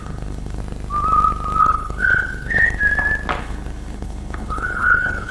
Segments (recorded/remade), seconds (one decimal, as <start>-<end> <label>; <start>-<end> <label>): 0.0-0.6 remade; 0.6-1.6 recorded; 1.6-2.8 remade; 2.8-3.4 recorded; 3.4-5.3 remade